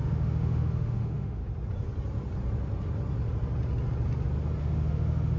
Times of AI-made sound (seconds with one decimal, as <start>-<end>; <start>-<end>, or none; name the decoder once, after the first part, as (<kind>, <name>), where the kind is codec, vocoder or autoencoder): 0.0-1.4 (autoencoder, DAC-VAE); 4.6-5.4